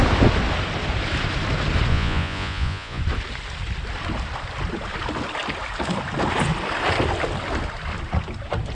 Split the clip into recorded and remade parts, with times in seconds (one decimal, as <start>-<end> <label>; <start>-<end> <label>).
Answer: 0.0-1.9 recorded; 1.9-3.0 remade; 3.0-8.7 recorded